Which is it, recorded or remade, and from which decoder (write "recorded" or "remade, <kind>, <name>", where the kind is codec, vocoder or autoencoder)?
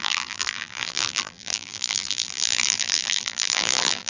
remade, vocoder, BigVGAN v2